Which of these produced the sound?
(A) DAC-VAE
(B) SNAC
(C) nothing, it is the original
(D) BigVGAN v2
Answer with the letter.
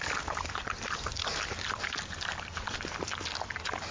D